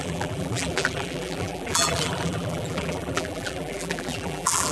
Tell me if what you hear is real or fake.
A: fake